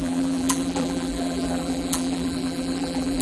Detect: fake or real fake